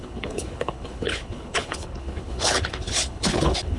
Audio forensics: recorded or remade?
remade